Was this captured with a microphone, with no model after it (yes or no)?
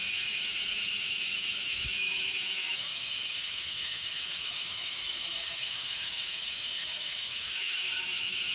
no